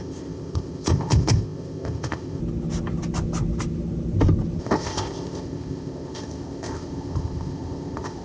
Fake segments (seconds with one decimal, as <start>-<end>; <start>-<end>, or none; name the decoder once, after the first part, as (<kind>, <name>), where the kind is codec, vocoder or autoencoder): 0.0-2.4 (codec, ZipCodec); 4.6-8.2